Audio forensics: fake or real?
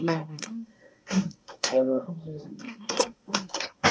fake